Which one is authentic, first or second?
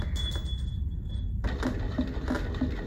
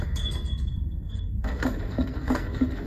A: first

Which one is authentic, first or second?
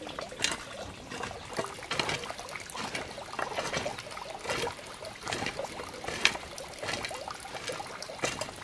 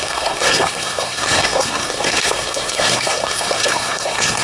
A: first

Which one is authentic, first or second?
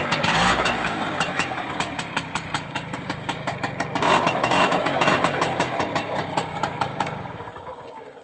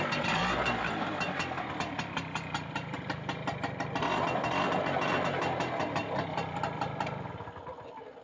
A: second